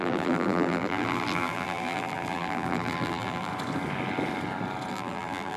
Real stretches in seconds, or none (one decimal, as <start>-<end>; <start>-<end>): 3.5-4.9